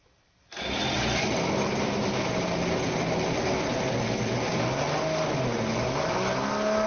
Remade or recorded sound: recorded